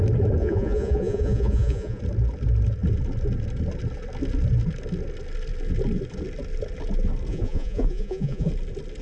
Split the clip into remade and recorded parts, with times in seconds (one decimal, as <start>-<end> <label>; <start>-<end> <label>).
0.0-0.4 recorded; 0.4-2.0 remade; 2.0-7.3 recorded; 7.3-8.5 remade; 8.5-9.0 recorded

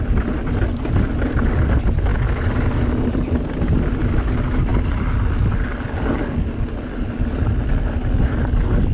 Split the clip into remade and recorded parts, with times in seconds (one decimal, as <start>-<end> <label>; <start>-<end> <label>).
0.0-8.9 recorded